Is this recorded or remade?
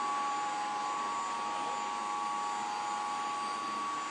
recorded